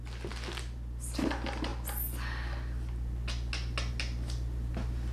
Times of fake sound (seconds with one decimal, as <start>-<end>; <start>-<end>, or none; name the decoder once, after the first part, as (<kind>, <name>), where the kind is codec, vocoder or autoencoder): none

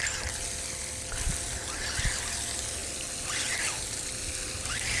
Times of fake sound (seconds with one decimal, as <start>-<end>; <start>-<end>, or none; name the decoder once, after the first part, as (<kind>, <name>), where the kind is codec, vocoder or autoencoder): none

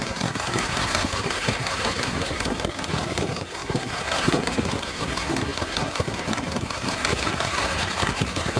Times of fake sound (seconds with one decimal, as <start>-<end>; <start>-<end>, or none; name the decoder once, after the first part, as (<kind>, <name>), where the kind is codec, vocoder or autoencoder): 0.0-8.6 (codec, SNAC)

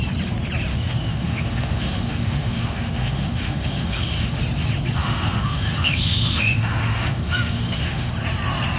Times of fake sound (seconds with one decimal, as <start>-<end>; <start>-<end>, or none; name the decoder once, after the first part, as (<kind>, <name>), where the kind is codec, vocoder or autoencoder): 0.7-4.4 (autoencoder, DAC-VAE); 5.0-8.1

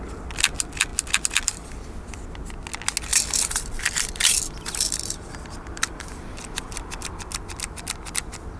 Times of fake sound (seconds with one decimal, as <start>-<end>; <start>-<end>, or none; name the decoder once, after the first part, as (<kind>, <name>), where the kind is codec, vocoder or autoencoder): 3.1-7.1 (vocoder, BigVGAN v2)